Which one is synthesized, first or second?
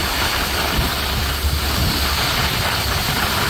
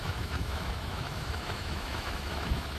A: second